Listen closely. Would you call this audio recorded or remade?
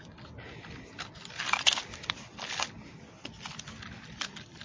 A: recorded